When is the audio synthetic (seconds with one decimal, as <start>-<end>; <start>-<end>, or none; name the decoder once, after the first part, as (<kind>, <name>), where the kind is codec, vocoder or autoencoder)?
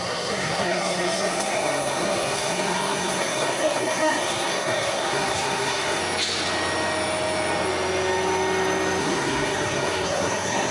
0.0-6.0 (codec, SNAC); 9.0-10.7